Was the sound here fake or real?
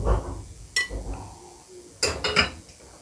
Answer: real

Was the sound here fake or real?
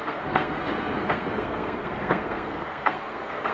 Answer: fake